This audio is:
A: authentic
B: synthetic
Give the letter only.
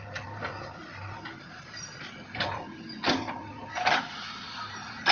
A